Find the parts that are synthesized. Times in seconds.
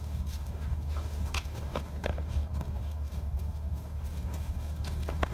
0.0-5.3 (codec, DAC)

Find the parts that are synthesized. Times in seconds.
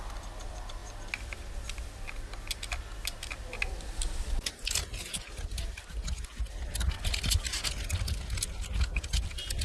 none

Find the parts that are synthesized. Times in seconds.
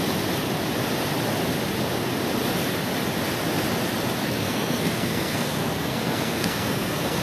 4.2-7.2 (codec, SNAC)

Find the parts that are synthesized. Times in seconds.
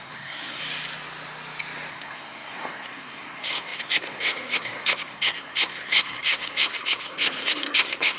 0.0-0.6 (codec, SNAC); 1.9-8.2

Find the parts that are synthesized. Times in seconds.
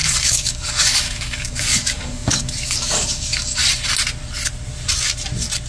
0.0-3.6 (codec, DAC)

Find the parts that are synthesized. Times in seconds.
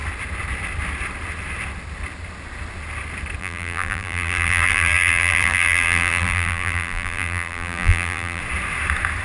3.4-8.4 (vocoder, BigVGAN v2)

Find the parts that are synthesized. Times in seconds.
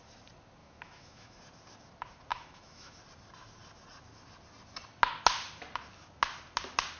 0.6-1.4 (autoencoder, DAC-VAE); 2.3-3.0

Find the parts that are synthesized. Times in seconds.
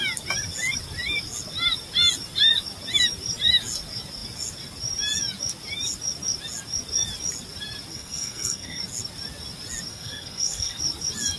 7.9-8.8 (codec, SNAC); 9.9-10.8